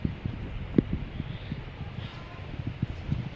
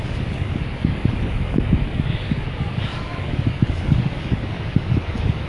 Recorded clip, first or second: first